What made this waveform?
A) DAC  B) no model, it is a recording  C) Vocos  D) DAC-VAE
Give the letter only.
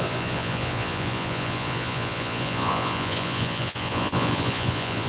C